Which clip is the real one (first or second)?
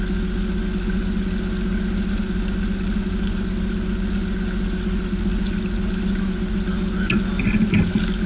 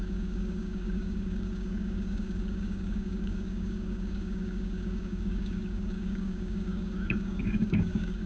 first